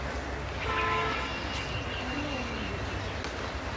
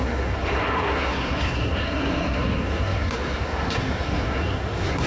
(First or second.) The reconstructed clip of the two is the second